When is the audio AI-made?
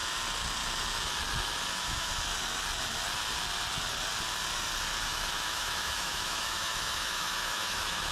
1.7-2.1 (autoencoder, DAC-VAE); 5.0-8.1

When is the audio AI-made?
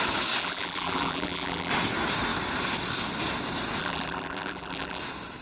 0.4-1.7 (vocoder, BigVGAN v2); 3.8-5.0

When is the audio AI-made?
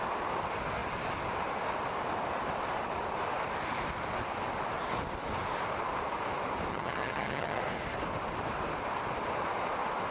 6.7-7.6 (vocoder, HiFi-GAN)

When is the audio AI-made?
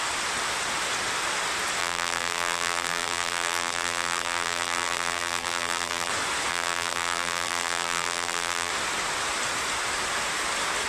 1.8-6.1 (vocoder, BigVGAN v2); 6.5-8.7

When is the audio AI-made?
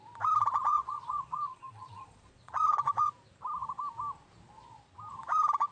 0.7-3.1 (vocoder, Vocos)